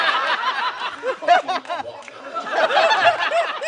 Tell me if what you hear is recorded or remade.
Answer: recorded